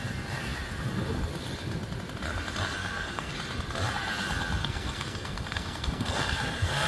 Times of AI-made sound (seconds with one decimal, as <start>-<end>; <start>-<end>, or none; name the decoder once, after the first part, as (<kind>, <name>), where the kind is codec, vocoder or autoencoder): 2.8-3.3 (codec, SNAC); 4.6-6.9